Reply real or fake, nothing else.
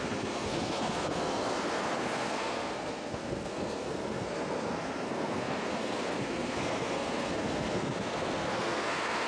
fake